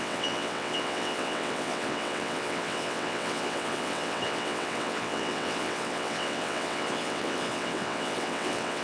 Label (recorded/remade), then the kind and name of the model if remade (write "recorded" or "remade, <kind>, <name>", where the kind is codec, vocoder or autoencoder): remade, vocoder, WaveNeXt